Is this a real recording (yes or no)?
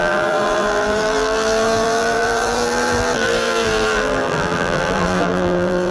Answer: no